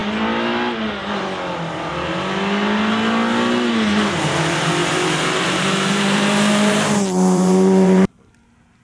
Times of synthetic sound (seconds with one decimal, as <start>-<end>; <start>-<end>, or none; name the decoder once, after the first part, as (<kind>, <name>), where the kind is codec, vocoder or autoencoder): 4.8-8.3 (vocoder, BigVGAN v2)